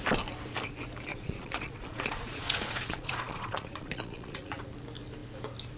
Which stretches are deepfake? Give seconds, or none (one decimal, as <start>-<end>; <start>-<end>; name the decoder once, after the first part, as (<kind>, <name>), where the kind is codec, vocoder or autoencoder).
1.1-4.6 (vocoder, Vocos)